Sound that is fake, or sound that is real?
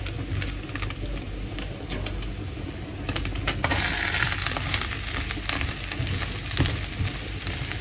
real